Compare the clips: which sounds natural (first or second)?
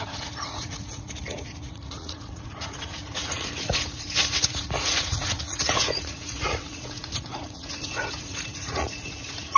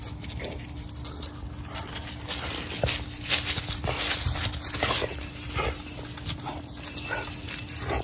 second